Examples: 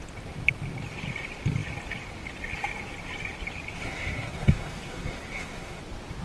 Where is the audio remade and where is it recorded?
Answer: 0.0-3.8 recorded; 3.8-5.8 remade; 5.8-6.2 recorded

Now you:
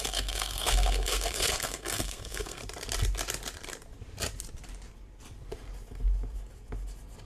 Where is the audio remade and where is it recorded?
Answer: 0.0-2.6 remade; 2.6-7.3 recorded